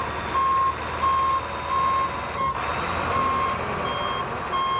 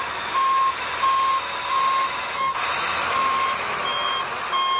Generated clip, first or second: second